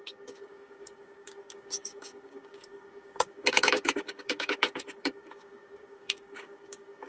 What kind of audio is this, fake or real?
fake